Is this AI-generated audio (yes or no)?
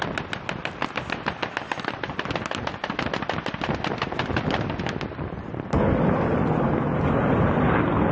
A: no